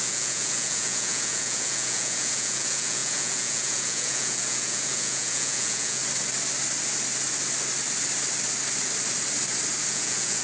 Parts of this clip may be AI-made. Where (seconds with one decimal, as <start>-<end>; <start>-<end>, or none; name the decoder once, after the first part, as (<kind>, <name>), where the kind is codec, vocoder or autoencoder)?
0.0-6.0 (vocoder, Vocos); 9.9-10.4